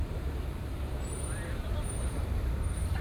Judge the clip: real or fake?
fake